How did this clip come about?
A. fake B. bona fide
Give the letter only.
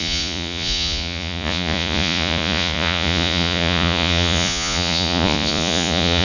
A